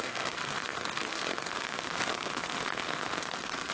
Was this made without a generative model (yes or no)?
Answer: no